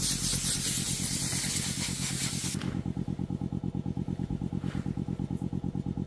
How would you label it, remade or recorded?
recorded